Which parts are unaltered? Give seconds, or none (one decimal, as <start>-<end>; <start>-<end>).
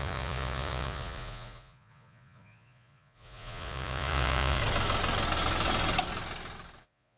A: 4.6-6.8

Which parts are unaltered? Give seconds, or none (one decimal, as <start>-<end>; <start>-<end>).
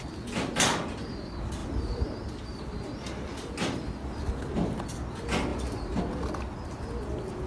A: 0.0-7.5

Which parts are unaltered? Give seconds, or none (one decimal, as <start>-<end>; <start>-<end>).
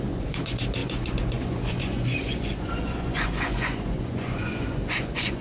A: none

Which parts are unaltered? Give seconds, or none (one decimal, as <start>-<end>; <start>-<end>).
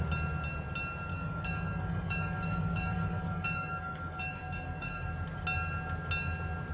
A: 0.0-1.1; 5.1-6.7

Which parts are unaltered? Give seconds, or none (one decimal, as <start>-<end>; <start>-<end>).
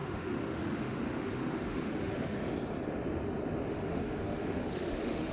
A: 2.5-3.7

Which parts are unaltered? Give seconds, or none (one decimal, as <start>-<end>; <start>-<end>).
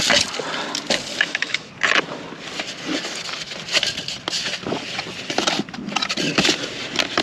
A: 0.0-1.1; 1.7-7.2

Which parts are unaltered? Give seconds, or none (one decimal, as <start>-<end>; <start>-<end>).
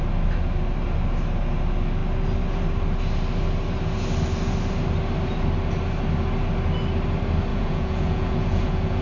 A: 0.0-7.5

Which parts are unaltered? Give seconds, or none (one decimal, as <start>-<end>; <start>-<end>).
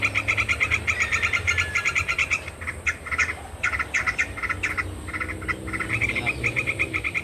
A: 0.0-7.2